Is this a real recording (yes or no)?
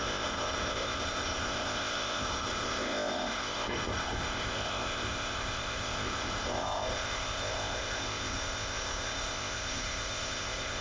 no